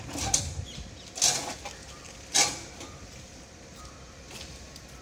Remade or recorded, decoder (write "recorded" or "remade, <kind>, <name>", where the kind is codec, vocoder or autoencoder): recorded